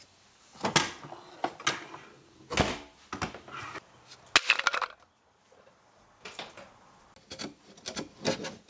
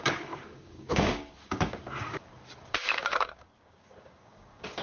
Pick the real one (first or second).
first